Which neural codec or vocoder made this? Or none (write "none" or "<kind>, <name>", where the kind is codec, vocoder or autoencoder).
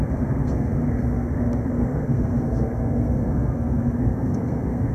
codec, SNAC